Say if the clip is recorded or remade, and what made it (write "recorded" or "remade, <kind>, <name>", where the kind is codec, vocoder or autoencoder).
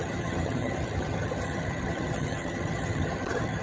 remade, vocoder, HiFi-GAN